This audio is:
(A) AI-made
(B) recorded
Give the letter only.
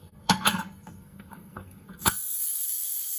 A